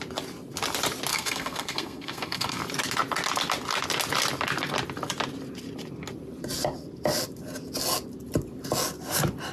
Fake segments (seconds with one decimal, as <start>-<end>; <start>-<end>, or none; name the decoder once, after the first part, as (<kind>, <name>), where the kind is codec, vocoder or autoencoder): 1.1-2.6 (codec, SNAC)